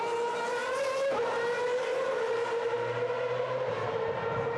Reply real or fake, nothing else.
real